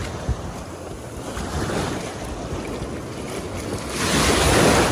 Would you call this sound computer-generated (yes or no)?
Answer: no